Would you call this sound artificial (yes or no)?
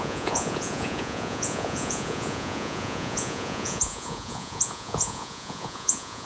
yes